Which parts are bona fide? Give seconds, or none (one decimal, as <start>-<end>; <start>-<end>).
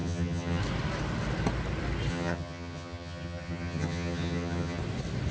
0.6-2.1; 4.8-5.3